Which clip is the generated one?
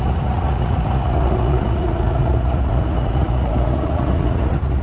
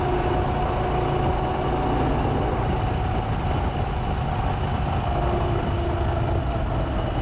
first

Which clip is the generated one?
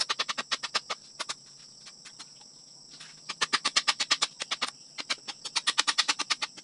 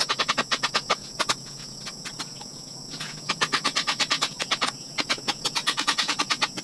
second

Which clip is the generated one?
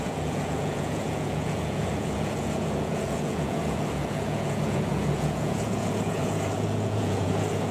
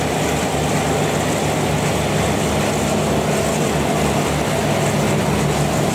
first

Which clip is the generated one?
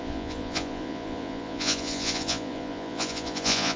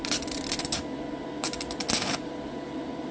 first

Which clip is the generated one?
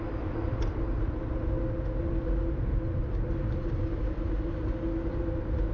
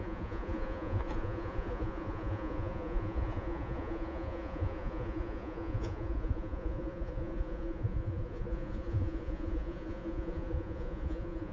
second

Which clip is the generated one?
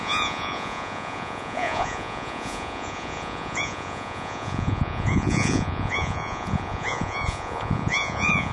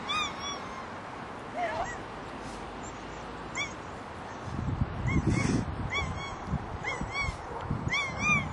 first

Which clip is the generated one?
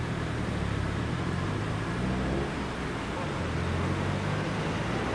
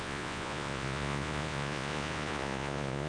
second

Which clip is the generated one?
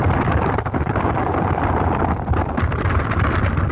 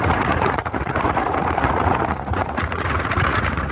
second